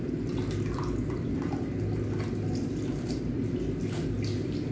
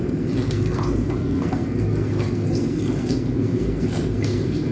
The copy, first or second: second